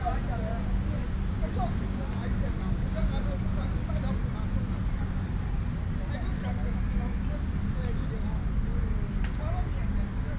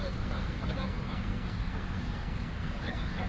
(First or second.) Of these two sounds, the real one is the first